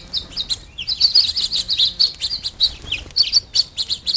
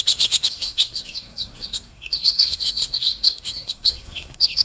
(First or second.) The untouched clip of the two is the first